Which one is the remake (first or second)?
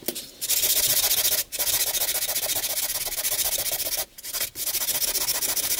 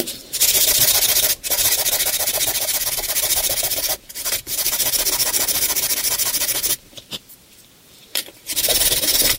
second